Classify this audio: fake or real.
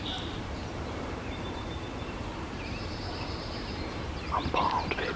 fake